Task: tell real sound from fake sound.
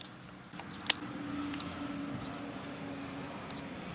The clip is real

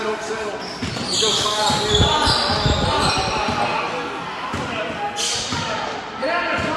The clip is real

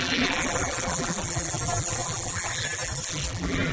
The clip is fake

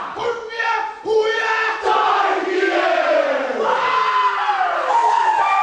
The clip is real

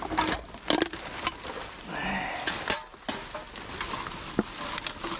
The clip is real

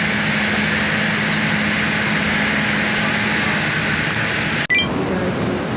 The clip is real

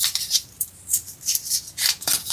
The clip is fake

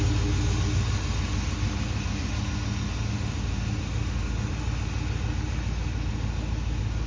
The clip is real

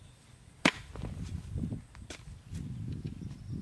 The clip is real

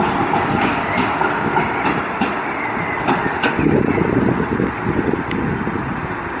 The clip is real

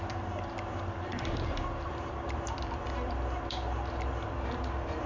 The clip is fake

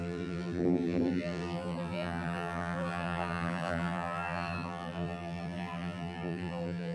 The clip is fake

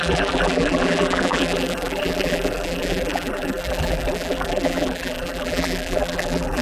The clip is fake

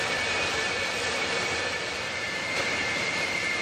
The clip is fake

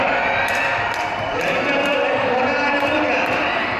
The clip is real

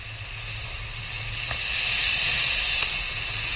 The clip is real